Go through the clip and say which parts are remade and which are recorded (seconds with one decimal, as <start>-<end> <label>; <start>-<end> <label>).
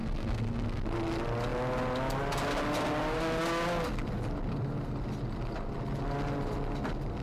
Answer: 0.0-0.8 remade; 0.8-7.2 recorded